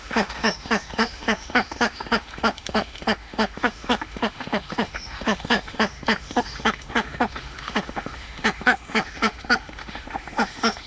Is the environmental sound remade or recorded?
remade